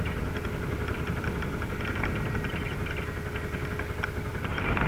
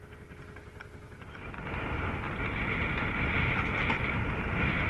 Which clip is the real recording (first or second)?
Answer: second